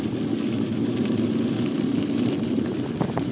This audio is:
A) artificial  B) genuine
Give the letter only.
B